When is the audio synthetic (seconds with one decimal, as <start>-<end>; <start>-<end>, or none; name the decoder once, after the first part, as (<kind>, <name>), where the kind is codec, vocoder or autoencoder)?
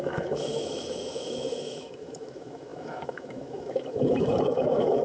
0.0-5.0 (autoencoder, DAC-VAE)